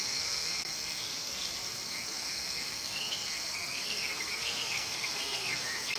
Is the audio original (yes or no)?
no